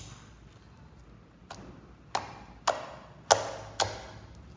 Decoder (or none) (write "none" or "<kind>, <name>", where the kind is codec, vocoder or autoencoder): none